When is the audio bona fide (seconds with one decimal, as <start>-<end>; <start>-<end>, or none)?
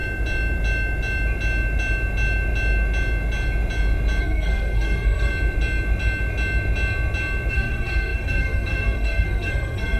0.0-4.2; 5.3-7.5